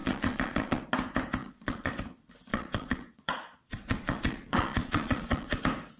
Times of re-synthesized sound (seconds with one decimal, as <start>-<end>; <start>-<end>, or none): 0.0-0.8; 1.4-1.9; 2.5-5.6